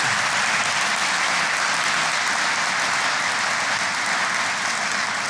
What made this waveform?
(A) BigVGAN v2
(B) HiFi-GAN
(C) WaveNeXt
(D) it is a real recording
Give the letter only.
D